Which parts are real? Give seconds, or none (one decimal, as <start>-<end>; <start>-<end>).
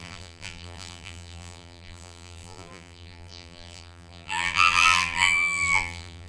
none